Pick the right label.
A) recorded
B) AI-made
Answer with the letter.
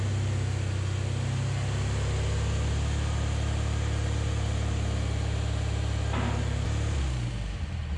A